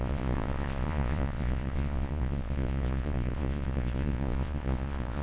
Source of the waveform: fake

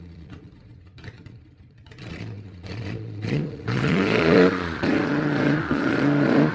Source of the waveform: fake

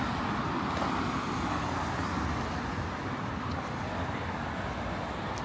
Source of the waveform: real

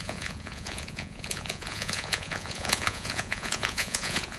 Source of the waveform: fake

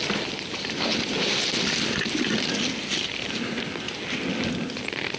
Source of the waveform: real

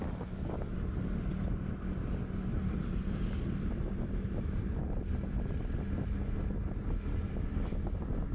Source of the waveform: real